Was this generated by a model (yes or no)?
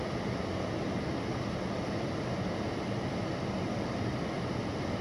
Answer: no